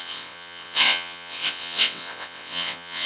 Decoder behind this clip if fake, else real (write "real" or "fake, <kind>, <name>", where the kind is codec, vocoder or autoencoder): fake, vocoder, WaveNeXt